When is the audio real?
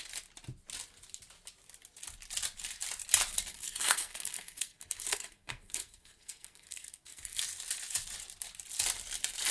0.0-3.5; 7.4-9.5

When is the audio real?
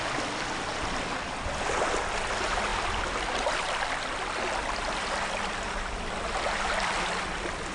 0.0-7.7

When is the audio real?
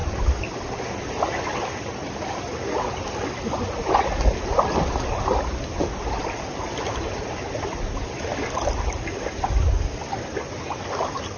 0.0-11.4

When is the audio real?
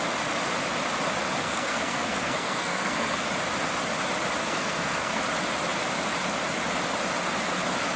0.0-1.4; 3.2-4.4; 5.2-8.0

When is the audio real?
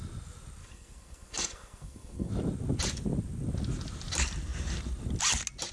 0.0-0.6; 2.3-5.7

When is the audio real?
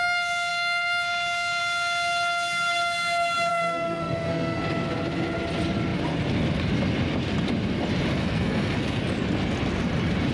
0.0-3.5; 4.6-8.2; 9.0-10.3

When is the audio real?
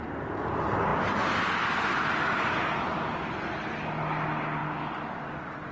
0.0-5.7